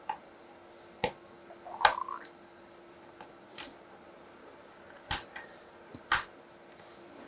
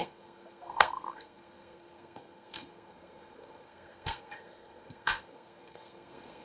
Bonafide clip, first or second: first